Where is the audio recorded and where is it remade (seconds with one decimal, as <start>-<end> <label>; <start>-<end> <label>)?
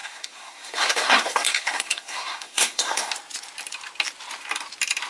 0.0-3.1 remade; 3.1-5.1 recorded